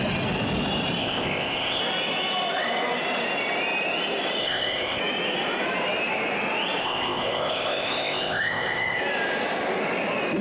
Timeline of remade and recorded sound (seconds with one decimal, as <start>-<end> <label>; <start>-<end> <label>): 0.0-1.0 recorded; 1.0-1.8 remade; 1.8-4.4 recorded; 4.4-5.0 remade; 5.0-6.8 recorded; 6.8-9.0 remade; 9.0-10.4 recorded